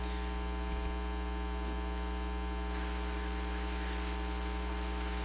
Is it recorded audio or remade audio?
recorded